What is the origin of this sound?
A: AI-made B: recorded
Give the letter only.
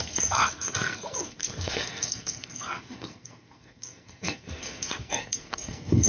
A